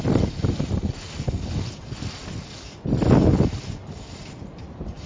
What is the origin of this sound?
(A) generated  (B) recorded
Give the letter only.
B